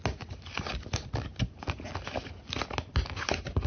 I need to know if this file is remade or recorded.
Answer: recorded